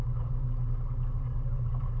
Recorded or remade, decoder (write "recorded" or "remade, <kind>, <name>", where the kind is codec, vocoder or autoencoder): recorded